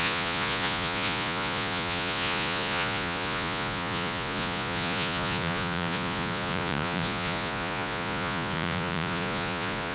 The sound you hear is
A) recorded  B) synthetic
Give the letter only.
B